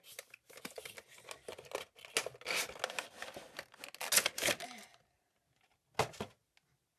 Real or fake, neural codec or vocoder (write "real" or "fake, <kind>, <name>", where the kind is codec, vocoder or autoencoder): real